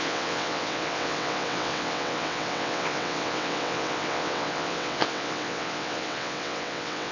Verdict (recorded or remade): remade